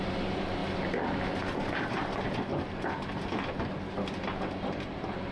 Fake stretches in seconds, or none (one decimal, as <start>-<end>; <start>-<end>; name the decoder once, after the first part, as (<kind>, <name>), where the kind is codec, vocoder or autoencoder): none